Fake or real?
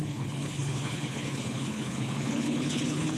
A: fake